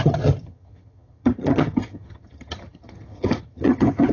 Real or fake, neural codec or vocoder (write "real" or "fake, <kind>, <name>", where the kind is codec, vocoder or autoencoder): fake, vocoder, HiFi-GAN